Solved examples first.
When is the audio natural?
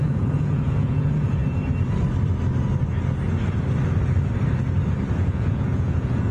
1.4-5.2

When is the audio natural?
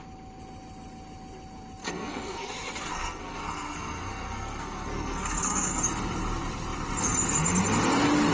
0.0-1.8; 2.5-2.9; 5.8-8.3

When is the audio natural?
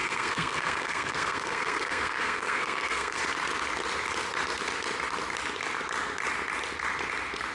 3.2-7.5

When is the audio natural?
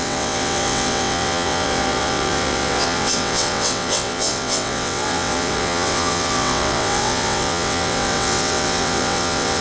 none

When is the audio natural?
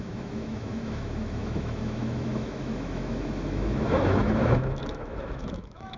none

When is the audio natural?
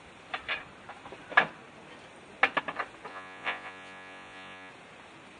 0.0-3.1; 4.7-5.4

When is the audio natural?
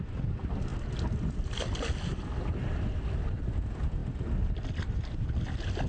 0.0-5.9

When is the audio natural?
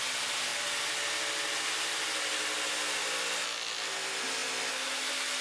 0.0-5.4